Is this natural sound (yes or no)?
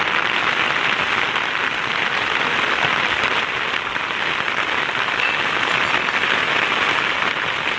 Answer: yes